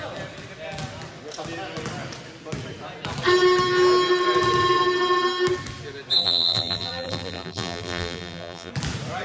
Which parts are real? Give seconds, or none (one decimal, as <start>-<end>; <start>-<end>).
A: 0.0-6.2; 8.7-9.2